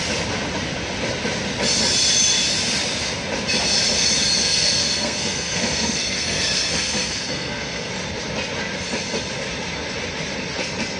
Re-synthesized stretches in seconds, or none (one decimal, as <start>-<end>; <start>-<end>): 4.4-7.9